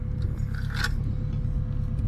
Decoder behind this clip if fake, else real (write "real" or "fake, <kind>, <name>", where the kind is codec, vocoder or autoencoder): real